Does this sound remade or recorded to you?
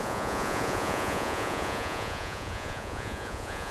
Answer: remade